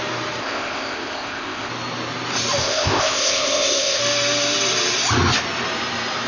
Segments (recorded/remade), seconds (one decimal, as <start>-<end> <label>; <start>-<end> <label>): 0.0-0.4 recorded; 0.4-1.7 remade; 1.7-2.6 recorded; 2.6-4.0 remade; 4.0-6.3 recorded